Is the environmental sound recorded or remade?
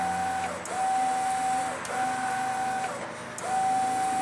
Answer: recorded